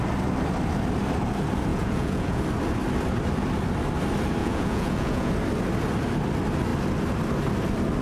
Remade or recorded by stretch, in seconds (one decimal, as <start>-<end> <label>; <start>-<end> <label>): 0.0-1.7 recorded; 1.7-2.4 remade; 2.4-4.4 recorded; 4.4-5.3 remade; 5.3-8.0 recorded